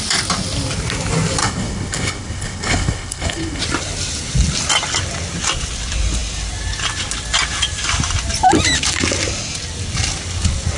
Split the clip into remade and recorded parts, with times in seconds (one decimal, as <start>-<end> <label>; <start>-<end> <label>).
0.0-1.4 recorded; 1.4-3.6 remade; 3.6-10.8 recorded